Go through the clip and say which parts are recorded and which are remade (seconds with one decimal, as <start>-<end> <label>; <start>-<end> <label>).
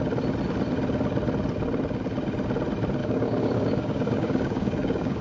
0.0-3.0 recorded; 3.0-5.2 remade